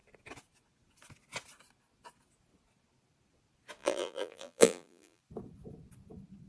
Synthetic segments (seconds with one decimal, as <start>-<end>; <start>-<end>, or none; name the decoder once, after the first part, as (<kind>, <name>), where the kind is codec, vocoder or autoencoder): 3.8-5.2 (vocoder, BigVGAN v2)